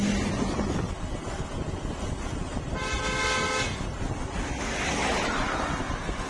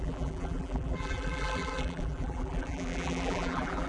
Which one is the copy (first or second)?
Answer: second